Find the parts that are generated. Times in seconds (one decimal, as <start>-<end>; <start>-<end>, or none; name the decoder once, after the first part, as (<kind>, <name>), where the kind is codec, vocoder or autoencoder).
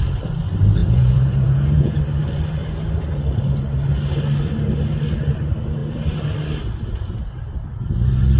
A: 0.8-2.0 (vocoder, Vocos)